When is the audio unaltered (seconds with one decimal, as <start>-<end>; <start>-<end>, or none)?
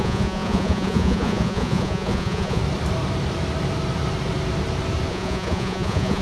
2.6-5.1